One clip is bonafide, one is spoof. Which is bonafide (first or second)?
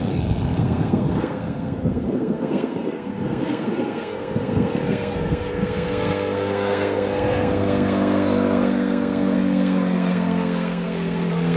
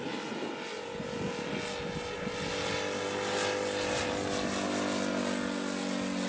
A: second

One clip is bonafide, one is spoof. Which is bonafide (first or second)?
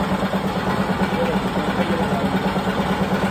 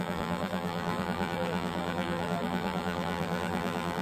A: first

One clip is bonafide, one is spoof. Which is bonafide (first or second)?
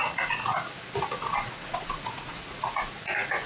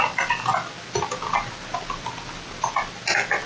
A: second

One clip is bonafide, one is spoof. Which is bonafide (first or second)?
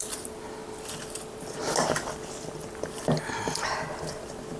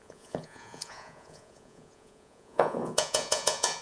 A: first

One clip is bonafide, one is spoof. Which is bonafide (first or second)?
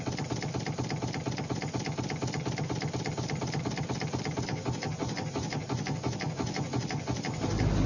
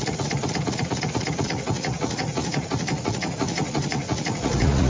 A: first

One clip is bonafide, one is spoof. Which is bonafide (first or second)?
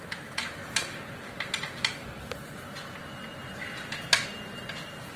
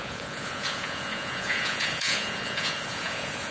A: first